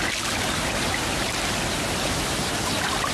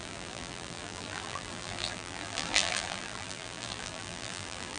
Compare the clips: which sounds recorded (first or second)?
first